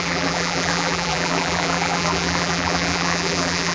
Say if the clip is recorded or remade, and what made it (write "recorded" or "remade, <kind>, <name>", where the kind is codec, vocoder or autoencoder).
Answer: remade, vocoder, BigVGAN v2